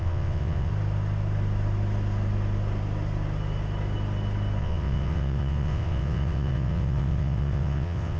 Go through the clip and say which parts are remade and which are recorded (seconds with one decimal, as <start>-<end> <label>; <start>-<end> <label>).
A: 0.0-0.7 remade; 0.7-4.6 recorded; 4.6-8.2 remade